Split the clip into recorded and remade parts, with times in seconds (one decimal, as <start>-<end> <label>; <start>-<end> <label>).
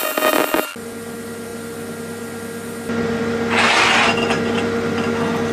0.0-5.5 recorded